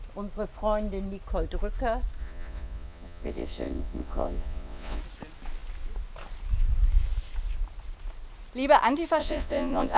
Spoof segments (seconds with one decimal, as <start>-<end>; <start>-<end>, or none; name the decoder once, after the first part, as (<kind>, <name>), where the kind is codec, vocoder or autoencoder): 2.2-5.0 (vocoder, Vocos); 9.2-10.0